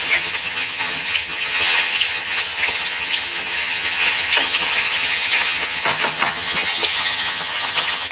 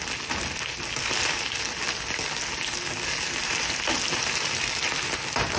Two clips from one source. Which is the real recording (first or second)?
second